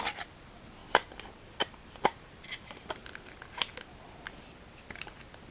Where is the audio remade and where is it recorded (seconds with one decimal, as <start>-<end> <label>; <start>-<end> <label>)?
0.0-0.8 remade; 0.8-1.5 recorded; 1.5-3.0 remade; 3.0-5.5 recorded